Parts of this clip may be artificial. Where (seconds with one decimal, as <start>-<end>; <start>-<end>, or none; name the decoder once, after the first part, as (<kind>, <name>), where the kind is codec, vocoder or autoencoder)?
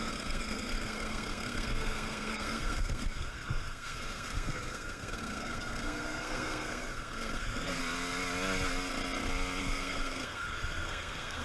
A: 0.0-7.8 (codec, SNAC); 9.6-11.4